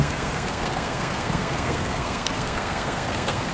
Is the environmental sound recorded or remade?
remade